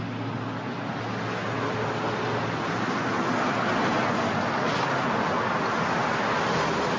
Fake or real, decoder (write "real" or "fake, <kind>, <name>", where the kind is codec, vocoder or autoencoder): real